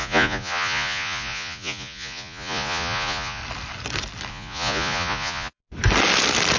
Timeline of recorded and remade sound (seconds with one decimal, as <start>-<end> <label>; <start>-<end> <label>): 0.0-3.4 remade; 3.4-4.3 recorded; 4.3-5.6 remade; 5.6-6.6 recorded